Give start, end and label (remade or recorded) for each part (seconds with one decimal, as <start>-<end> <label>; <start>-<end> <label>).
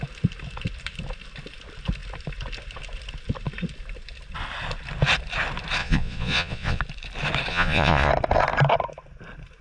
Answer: 0.0-5.8 recorded; 5.8-6.8 remade; 6.8-7.5 recorded; 7.5-8.1 remade; 8.1-9.6 recorded